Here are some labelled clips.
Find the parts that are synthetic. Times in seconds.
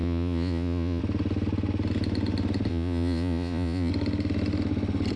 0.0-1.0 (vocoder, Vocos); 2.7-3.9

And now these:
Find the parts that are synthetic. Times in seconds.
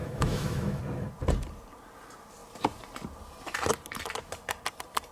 0.0-0.8 (autoencoder, DAC-VAE)